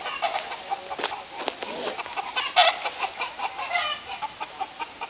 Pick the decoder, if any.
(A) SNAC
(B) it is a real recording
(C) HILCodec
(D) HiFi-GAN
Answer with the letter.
B